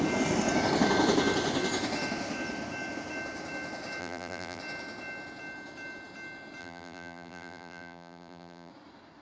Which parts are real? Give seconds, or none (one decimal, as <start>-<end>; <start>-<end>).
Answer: 0.0-4.0; 4.6-6.6; 8.7-9.2

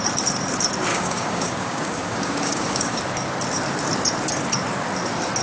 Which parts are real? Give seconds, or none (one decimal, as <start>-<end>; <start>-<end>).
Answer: 0.0-0.9; 3.0-5.4

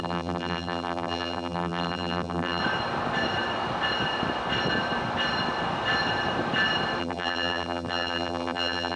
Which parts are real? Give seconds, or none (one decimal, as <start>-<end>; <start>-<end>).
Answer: 2.6-7.0

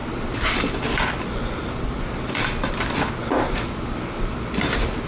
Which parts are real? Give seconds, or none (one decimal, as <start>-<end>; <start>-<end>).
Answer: 0.0-5.1